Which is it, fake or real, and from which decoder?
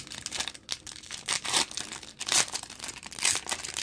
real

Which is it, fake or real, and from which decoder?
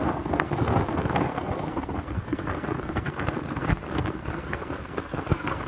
fake, codec, SNAC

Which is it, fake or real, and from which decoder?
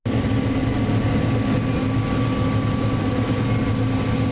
real